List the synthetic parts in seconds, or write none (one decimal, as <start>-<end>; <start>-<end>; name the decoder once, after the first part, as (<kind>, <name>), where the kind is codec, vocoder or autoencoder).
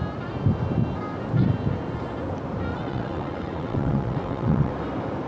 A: 2.7-4.7 (vocoder, WaveNeXt)